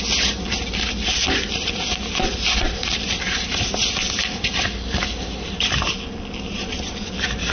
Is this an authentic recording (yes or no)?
yes